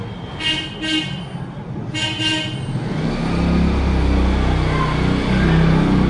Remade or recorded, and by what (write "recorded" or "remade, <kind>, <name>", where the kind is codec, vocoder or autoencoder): recorded